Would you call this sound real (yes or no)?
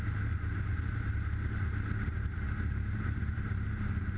no